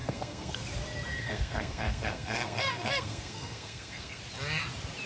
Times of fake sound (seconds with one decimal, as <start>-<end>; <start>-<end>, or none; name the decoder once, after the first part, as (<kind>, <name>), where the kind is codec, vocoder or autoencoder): 0.0-0.6 (codec, SNAC); 1.1-4.2